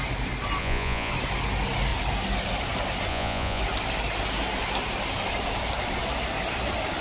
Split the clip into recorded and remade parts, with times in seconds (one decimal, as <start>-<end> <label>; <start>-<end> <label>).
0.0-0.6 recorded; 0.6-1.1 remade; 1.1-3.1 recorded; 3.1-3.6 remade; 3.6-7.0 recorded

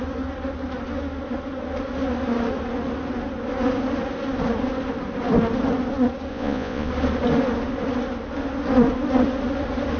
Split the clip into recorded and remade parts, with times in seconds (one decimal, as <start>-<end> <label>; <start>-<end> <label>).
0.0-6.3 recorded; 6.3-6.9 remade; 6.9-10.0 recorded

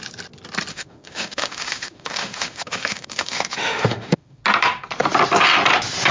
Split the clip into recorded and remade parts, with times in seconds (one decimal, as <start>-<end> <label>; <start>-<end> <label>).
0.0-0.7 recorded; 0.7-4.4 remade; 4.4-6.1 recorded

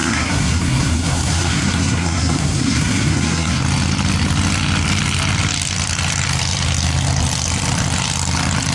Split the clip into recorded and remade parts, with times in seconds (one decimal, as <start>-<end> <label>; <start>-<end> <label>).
0.0-3.6 remade; 3.6-8.7 recorded

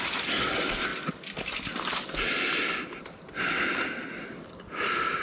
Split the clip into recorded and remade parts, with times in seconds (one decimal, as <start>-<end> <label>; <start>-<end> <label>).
0.0-5.2 recorded

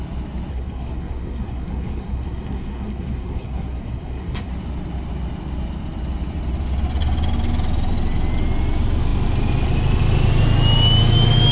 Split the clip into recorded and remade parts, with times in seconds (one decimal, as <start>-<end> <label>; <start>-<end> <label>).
0.0-0.5 recorded; 0.5-4.5 remade; 4.5-11.5 recorded

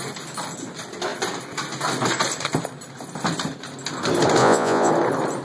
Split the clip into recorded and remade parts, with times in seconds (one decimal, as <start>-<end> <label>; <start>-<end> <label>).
0.0-4.4 recorded; 4.4-4.9 remade; 4.9-5.4 recorded